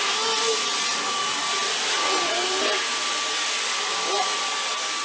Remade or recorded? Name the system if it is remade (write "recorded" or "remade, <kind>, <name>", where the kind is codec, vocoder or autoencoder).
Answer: recorded